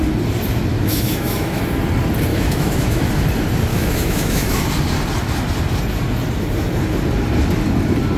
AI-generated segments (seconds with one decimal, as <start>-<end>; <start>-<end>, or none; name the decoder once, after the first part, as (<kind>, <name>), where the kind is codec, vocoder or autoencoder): 0.7-1.6 (autoencoder, DAC-VAE); 2.3-3.1; 3.7-4.7